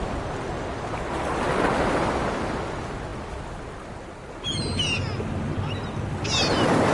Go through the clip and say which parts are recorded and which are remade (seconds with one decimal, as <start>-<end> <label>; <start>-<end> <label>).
0.0-6.9 recorded